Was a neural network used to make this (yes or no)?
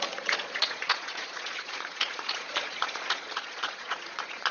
yes